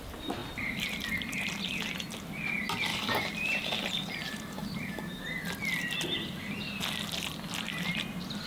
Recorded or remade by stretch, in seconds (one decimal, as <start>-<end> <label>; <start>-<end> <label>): 0.0-2.9 recorded; 2.9-5.2 remade; 5.2-8.5 recorded